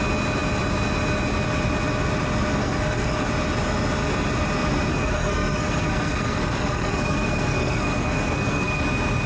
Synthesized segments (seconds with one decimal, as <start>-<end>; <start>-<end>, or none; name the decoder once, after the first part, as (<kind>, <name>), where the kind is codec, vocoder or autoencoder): 2.6-3.3 (codec, SNAC); 4.9-8.8